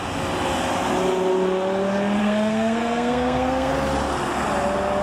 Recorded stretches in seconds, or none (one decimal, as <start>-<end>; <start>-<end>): 0.0-2.2; 3.7-5.0